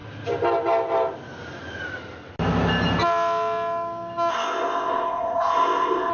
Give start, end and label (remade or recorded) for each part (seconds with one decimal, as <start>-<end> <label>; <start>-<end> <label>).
0.0-4.3 recorded; 4.3-6.1 remade

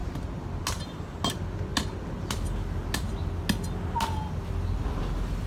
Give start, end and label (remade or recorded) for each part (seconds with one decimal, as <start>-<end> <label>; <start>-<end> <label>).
0.0-5.5 recorded

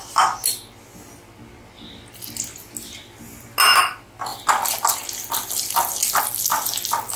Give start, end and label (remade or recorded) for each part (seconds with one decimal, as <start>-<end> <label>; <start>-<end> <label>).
0.0-7.2 recorded

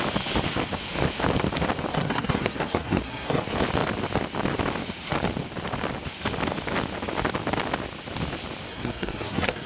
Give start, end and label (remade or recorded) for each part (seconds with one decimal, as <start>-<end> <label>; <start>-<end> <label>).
0.0-1.9 recorded; 1.9-3.4 remade; 3.4-8.7 recorded; 8.7-9.7 remade

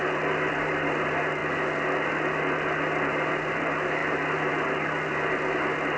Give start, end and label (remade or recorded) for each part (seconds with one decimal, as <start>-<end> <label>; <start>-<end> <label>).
0.0-1.4 remade; 1.4-2.1 recorded; 2.1-4.0 remade; 4.0-4.5 recorded; 4.5-6.0 remade

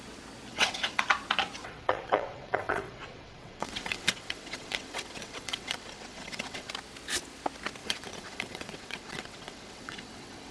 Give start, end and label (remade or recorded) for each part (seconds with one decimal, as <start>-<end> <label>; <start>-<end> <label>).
0.0-0.5 recorded; 0.5-1.0 remade; 1.0-1.6 recorded; 1.6-6.7 remade; 6.7-7.8 recorded; 7.8-10.5 remade

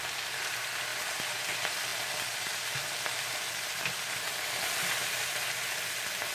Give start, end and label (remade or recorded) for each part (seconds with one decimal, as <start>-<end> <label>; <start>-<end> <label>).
0.0-1.9 recorded; 1.9-5.2 remade; 5.2-6.3 recorded